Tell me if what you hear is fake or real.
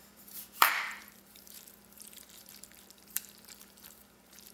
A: fake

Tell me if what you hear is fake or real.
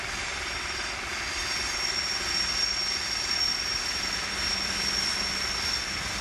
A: real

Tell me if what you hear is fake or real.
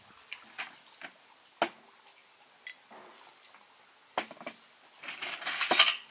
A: real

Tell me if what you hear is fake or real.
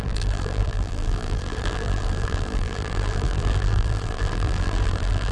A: fake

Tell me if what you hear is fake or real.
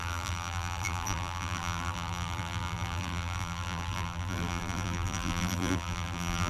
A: fake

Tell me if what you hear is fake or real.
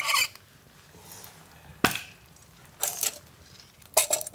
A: real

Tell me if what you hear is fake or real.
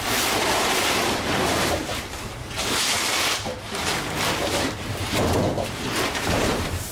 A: fake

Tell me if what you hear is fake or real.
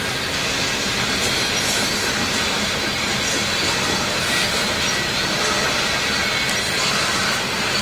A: real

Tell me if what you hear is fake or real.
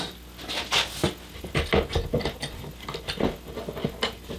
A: real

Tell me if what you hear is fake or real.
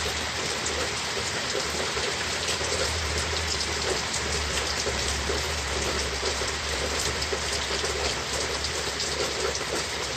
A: fake